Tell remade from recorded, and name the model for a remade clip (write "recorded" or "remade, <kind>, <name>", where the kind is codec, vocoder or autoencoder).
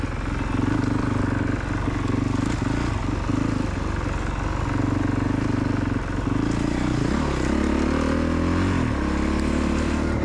recorded